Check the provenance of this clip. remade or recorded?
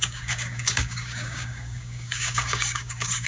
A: remade